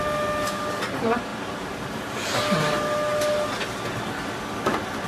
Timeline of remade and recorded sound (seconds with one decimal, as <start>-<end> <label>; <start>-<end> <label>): 0.0-5.1 recorded